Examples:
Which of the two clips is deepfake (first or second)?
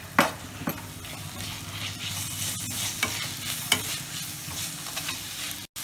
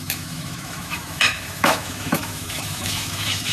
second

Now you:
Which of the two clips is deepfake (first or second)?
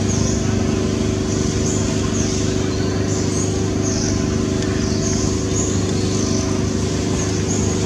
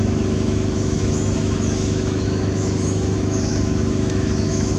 second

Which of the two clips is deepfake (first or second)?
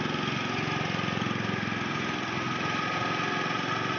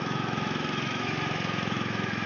second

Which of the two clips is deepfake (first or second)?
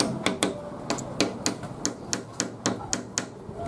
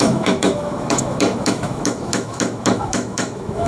second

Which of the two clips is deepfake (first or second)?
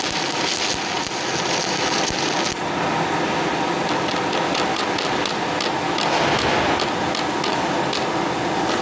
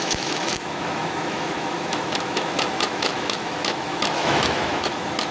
second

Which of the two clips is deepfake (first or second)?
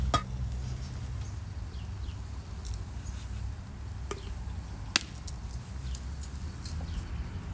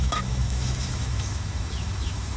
second